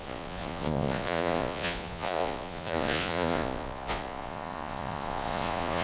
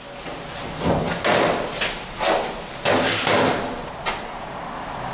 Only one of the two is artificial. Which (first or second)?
first